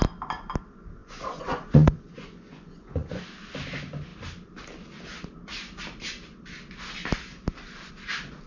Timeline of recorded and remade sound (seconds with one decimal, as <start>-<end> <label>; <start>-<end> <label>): 0.0-1.0 recorded; 1.0-3.2 remade; 3.2-8.5 recorded